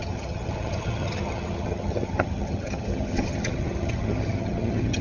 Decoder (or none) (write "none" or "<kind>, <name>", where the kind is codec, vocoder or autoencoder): vocoder, HiFi-GAN